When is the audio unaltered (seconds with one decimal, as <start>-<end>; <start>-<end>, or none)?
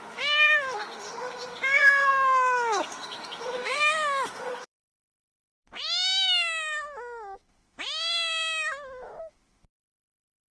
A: none